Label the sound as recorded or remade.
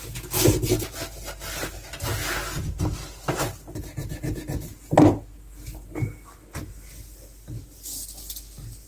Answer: recorded